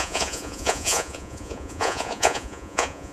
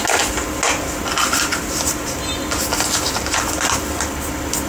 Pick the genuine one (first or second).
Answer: second